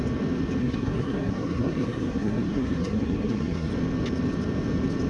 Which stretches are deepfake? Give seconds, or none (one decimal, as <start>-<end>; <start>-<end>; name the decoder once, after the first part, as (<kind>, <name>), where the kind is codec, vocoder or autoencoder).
0.6-3.7 (codec, SNAC)